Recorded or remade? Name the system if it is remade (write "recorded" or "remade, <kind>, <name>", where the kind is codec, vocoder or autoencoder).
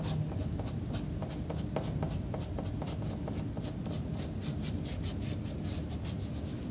recorded